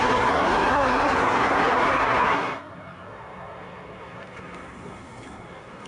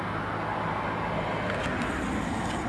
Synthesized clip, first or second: first